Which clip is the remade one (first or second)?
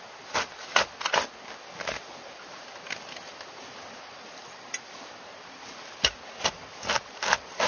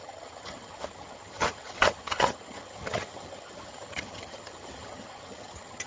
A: second